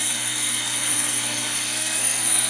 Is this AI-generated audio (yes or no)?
yes